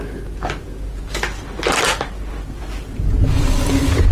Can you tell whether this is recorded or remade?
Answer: recorded